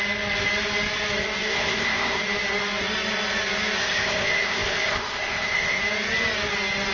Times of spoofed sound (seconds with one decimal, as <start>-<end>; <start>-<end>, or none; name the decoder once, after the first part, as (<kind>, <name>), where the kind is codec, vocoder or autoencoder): 1.5-2.2 (codec, ZipCodec); 3.8-5.8